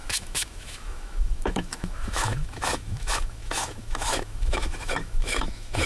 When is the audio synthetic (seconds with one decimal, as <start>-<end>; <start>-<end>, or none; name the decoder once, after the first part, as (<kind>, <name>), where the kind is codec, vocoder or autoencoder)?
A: 0.0-5.9 (autoencoder, DAC-VAE)